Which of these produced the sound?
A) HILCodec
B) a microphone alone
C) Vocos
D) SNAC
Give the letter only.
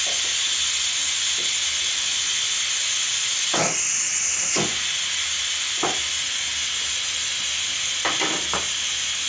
B